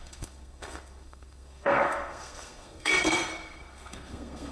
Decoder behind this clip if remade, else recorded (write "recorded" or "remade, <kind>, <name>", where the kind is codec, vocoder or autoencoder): remade, codec, SNAC